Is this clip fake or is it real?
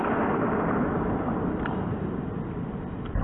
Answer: real